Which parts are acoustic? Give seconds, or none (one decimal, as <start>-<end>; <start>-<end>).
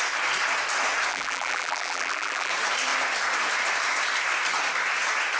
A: 0.0-1.1; 2.5-5.4